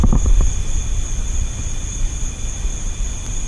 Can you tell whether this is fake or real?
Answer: fake